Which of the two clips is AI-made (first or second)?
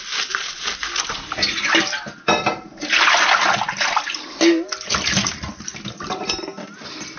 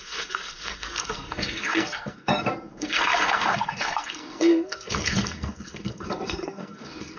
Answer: second